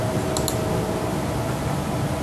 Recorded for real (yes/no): yes